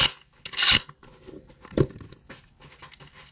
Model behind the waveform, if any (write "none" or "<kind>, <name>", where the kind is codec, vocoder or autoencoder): none